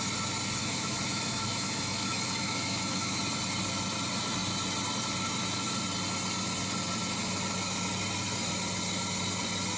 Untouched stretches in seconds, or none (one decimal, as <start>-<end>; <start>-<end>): 0.0-0.6; 3.2-9.8